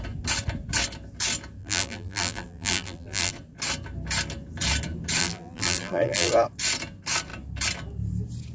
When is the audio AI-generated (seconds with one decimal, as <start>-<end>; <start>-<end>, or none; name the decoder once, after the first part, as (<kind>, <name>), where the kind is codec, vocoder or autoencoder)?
1.6-3.3 (vocoder, BigVGAN v2); 5.2-6.3